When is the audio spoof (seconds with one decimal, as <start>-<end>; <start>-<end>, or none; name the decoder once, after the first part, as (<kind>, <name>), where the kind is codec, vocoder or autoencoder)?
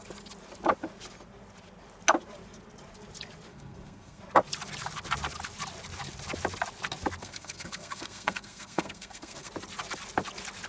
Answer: 3.5-4.2 (codec, SNAC); 7.2-9.5